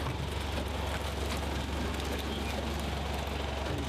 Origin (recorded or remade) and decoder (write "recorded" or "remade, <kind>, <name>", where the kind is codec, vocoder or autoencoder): recorded